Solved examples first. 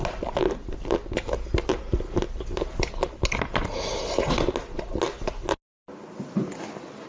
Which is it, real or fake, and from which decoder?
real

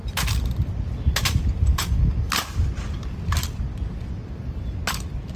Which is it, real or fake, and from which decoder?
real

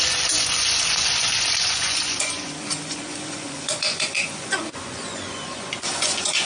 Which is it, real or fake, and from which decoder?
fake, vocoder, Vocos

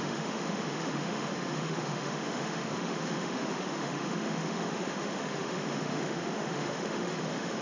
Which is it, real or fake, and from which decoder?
fake, autoencoder, DAC-VAE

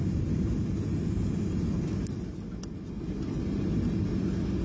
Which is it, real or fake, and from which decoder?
real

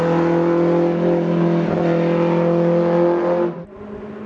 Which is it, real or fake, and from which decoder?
real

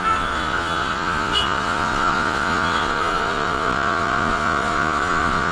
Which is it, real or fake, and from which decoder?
fake, vocoder, Vocos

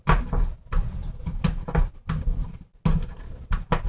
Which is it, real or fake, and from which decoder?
real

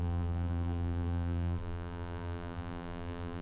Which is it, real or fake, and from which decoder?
fake, vocoder, BigVGAN v2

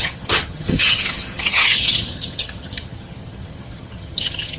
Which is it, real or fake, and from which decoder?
fake, vocoder, HiFi-GAN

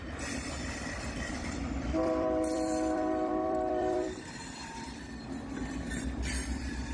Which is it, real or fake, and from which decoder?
fake, vocoder, BigVGAN v2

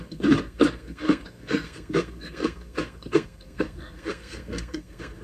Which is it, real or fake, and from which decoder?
fake, codec, SNAC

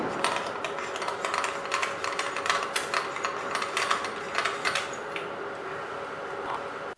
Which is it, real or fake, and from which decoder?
real